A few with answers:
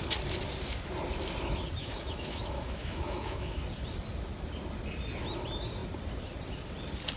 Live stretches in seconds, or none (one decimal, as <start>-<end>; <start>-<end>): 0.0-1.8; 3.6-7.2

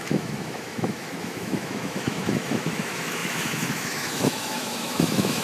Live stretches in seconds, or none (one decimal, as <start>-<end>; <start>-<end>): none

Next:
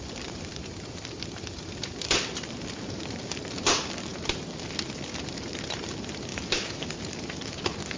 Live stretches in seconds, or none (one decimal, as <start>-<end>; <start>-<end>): 0.0-6.3; 6.9-8.0